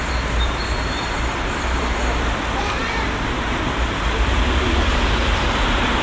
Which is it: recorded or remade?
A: remade